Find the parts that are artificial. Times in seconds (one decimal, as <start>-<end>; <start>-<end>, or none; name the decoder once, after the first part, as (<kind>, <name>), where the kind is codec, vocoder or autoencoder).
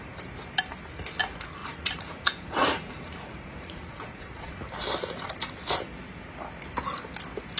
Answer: 1.6-4.5 (vocoder, Vocos)